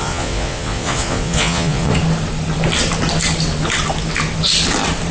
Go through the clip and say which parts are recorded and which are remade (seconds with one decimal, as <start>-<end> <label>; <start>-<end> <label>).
0.0-1.9 remade; 1.9-5.1 recorded